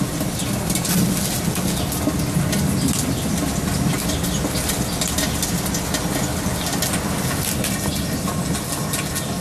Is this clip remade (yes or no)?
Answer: no